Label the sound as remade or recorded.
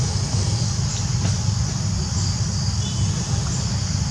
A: recorded